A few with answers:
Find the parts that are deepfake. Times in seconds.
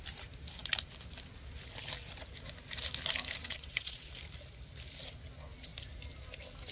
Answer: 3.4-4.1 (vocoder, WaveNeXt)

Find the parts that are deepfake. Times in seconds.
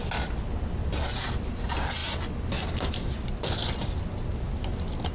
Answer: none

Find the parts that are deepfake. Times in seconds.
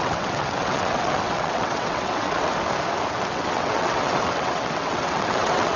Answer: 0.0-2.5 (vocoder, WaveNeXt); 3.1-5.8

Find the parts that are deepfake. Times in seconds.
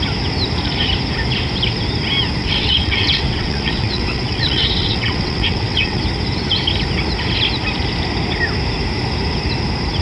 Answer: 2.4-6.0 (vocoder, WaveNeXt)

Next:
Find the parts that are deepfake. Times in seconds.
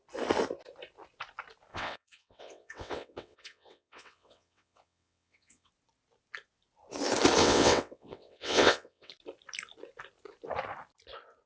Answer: 1.7-5.7 (vocoder, WaveNeXt); 7.4-9.1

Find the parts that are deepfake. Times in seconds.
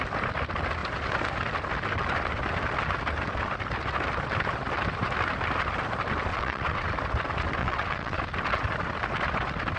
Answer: 6.3-6.9 (vocoder, WaveNeXt); 7.6-8.2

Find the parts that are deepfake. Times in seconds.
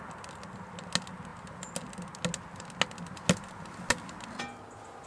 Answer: none